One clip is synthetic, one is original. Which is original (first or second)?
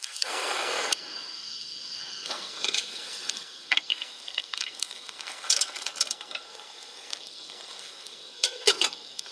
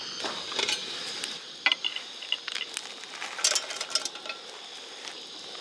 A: second